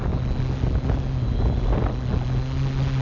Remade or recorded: recorded